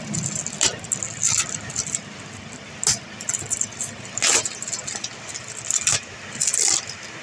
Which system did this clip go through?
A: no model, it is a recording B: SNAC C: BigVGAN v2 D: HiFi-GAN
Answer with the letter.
A